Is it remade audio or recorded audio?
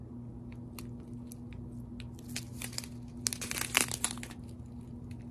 recorded